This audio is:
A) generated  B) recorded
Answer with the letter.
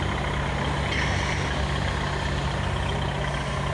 B